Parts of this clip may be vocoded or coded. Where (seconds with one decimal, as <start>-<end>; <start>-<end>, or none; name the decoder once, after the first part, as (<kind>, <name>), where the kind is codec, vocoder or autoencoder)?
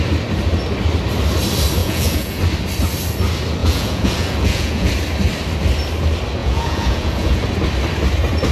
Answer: 1.8-2.4 (vocoder, Vocos); 3.6-4.9; 6.4-7.4